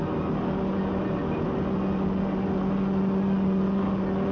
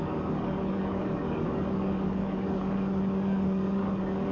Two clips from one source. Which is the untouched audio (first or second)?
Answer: first